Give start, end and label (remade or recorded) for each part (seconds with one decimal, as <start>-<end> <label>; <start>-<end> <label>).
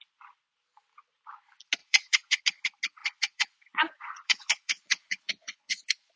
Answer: 0.0-1.8 recorded; 1.8-2.4 remade; 2.4-3.0 recorded; 3.0-5.8 remade; 5.8-6.2 recorded